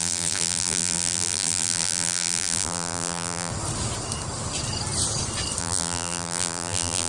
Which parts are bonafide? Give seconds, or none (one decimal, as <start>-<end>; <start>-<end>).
3.5-5.6

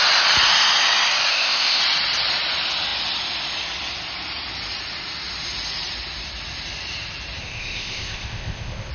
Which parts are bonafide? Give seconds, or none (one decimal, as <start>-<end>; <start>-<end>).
0.0-1.3; 1.8-7.4

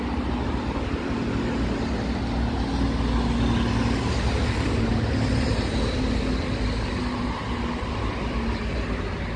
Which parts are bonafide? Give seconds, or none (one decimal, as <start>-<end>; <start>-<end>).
0.0-9.4

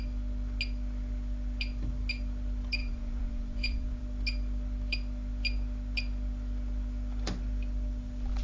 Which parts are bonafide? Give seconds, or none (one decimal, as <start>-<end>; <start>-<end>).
0.0-2.8; 4.0-8.4